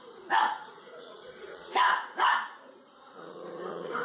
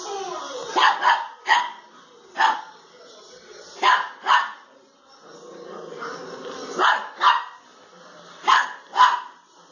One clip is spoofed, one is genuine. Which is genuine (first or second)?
second